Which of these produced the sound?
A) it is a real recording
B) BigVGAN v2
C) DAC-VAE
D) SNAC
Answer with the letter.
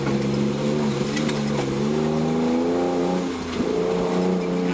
A